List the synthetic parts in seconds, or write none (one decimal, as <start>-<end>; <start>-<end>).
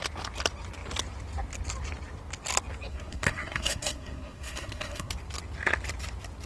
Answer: 2.9-5.1